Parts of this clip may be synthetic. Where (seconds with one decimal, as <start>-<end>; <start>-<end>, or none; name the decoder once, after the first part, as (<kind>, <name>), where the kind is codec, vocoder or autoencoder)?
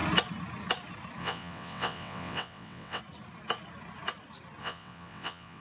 1.2-3.0 (vocoder, WaveNeXt); 4.6-5.6